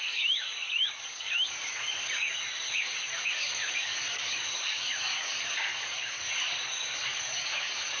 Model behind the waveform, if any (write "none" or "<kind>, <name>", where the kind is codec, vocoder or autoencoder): codec, DAC